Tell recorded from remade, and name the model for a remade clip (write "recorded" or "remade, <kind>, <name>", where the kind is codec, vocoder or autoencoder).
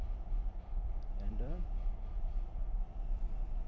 remade, vocoder, BigVGAN v2